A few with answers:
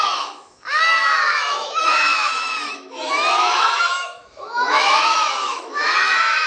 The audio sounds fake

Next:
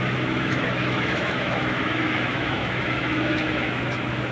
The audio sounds fake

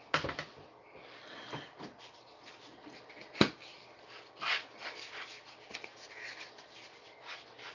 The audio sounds real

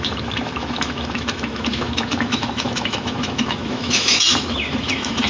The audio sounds fake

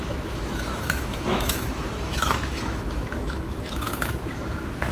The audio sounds fake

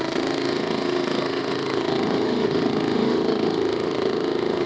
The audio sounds fake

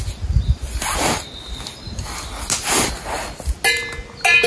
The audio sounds real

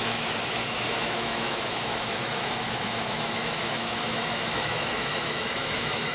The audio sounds fake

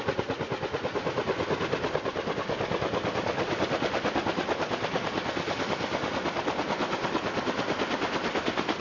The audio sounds real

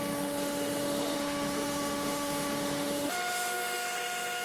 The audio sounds fake